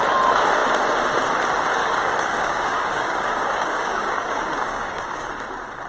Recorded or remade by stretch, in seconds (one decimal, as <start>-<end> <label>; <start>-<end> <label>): 0.0-1.8 recorded; 1.8-5.3 remade; 5.3-5.9 recorded